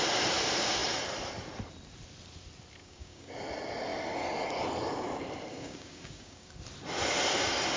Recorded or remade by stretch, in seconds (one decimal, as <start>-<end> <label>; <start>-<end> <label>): 0.0-2.8 recorded; 2.8-3.3 remade; 3.3-5.5 recorded; 5.5-6.5 remade; 6.5-7.8 recorded